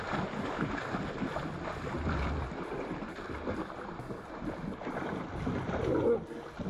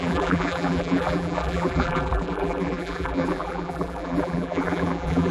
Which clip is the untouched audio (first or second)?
first